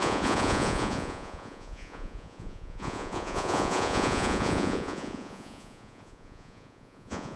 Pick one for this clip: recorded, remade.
remade